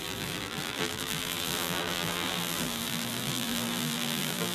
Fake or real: fake